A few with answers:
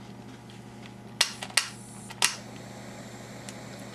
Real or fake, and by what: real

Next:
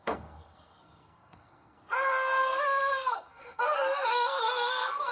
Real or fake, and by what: fake, codec, SNAC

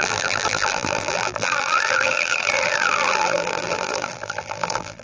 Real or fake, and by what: fake, vocoder, BigVGAN v2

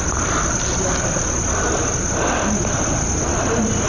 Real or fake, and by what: real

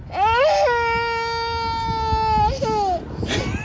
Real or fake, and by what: real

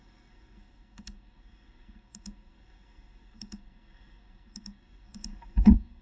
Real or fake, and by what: fake, codec, SNAC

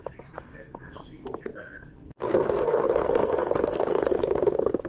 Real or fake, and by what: fake, codec, SNAC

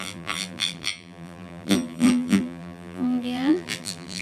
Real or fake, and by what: fake, vocoder, BigVGAN v2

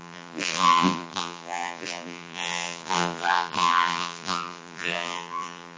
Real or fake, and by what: fake, vocoder, BigVGAN v2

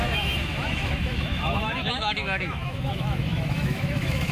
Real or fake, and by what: fake, autoencoder, DAC-VAE